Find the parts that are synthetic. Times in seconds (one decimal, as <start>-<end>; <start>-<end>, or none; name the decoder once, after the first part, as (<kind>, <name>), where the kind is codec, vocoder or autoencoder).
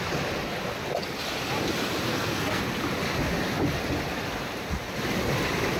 2.1-2.6 (codec, SNAC)